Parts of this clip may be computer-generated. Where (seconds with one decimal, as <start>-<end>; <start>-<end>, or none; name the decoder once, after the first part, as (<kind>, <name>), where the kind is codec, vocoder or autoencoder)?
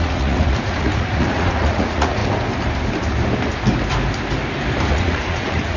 0.0-2.2 (vocoder, Vocos); 4.9-5.8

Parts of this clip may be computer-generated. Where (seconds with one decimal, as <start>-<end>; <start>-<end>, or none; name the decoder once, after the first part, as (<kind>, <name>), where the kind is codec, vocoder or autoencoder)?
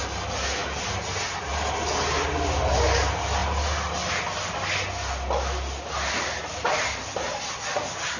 none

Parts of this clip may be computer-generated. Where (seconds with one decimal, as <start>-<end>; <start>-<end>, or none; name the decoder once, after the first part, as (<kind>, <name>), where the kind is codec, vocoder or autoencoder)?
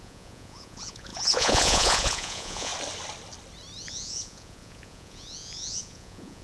0.0-2.7 (vocoder, Vocos); 3.8-6.4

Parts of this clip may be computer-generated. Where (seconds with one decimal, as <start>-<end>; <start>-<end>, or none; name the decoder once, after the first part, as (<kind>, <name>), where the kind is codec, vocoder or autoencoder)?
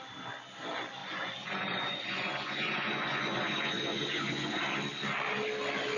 1.0-4.6 (vocoder, Vocos)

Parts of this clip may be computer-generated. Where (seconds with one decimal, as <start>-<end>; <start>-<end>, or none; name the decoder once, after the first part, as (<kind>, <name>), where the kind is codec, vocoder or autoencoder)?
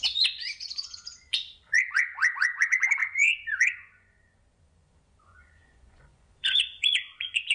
0.0-7.5 (vocoder, Vocos)